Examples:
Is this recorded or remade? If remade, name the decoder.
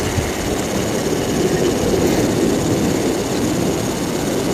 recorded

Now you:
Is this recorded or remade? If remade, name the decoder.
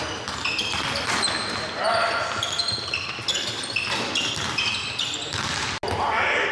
recorded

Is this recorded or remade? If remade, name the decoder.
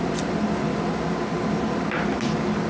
recorded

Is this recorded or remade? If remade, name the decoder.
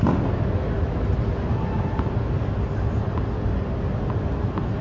recorded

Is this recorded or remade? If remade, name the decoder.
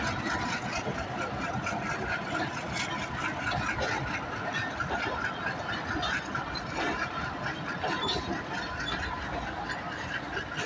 recorded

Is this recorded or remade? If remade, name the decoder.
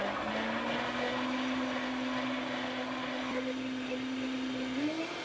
recorded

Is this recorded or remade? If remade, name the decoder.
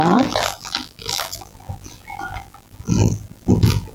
remade, vocoder, BigVGAN v2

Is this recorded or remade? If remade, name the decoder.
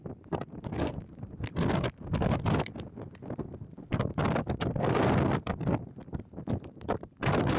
recorded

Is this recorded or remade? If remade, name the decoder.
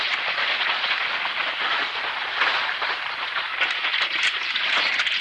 recorded